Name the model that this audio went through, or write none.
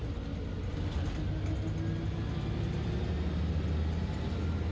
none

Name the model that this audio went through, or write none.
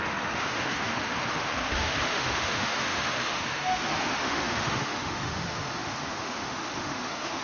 autoencoder, DAC-VAE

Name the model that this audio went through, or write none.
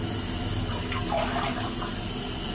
none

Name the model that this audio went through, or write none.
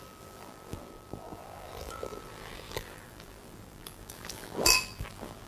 vocoder, BigVGAN v2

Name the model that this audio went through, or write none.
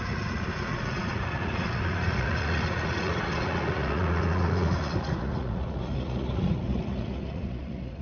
vocoder, Vocos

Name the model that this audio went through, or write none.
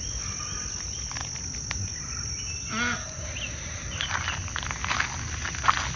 none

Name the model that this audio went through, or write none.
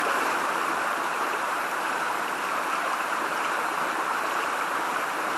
vocoder, BigVGAN v2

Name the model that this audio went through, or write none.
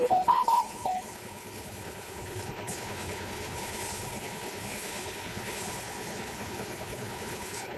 codec, HILCodec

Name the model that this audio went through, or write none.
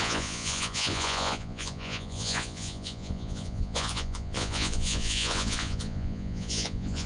vocoder, Vocos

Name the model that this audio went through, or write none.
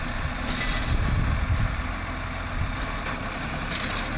none